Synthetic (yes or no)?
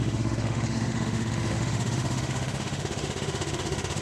yes